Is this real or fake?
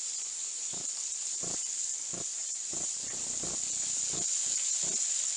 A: real